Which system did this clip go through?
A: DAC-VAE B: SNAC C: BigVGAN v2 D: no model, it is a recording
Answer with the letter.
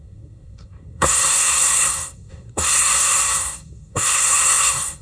B